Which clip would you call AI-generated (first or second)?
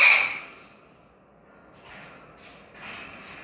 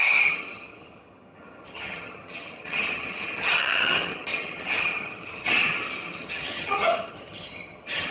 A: second